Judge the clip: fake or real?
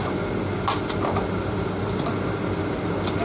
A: real